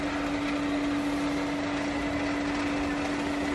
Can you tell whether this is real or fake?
real